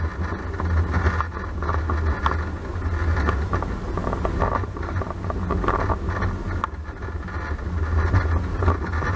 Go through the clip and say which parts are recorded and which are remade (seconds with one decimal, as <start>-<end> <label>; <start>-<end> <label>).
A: 0.0-9.2 recorded